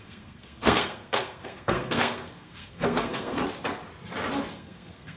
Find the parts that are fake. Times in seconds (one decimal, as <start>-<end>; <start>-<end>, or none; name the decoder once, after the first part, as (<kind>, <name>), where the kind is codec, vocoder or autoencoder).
0.0-3.4 (codec, SNAC); 4.5-5.2